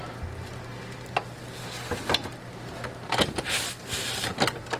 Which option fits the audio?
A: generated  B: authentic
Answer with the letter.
B